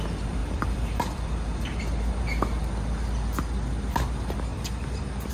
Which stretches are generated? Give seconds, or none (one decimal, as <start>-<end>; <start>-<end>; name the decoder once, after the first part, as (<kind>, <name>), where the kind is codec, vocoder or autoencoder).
0.4-1.8 (vocoder, BigVGAN v2); 4.5-5.3